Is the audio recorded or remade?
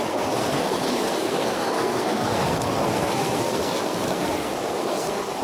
remade